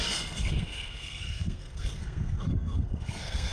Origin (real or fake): fake